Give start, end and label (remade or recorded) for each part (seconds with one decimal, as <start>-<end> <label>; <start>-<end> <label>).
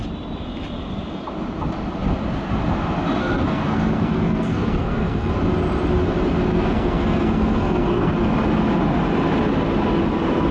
0.0-3.2 recorded; 3.2-5.3 remade; 5.3-6.5 recorded; 6.5-8.1 remade; 8.1-10.5 recorded